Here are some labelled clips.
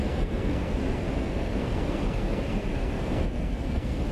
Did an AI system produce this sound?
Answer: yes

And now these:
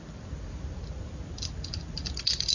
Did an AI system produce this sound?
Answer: no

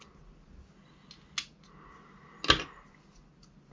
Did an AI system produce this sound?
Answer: no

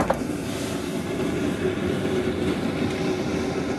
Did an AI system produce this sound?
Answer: no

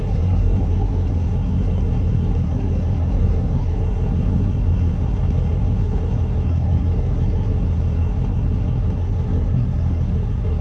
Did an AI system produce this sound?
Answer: yes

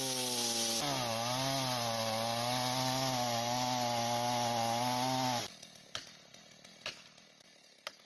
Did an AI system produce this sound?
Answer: no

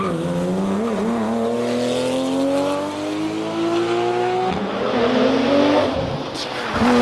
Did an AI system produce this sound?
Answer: no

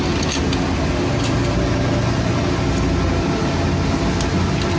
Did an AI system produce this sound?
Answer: no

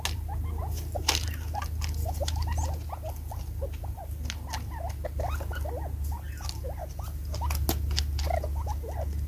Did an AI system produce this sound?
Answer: no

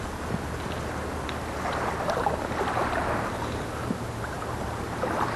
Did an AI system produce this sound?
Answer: no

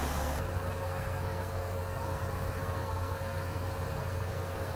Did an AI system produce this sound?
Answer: yes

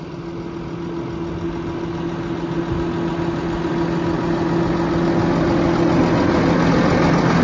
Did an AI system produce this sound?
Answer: no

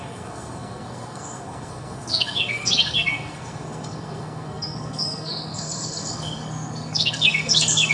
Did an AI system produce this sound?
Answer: yes